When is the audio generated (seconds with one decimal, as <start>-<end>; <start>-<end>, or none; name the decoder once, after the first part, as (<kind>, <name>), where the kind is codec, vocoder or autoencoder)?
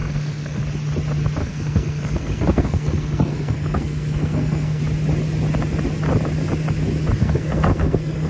0.0-0.6 (codec, SNAC); 1.4-4.8; 7.2-8.3